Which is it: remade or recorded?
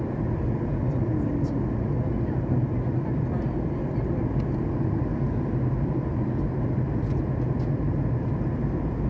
recorded